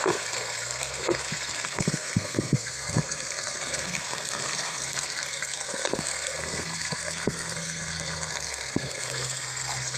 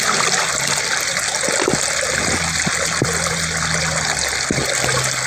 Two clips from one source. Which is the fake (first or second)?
first